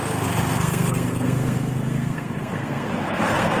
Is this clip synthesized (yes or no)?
yes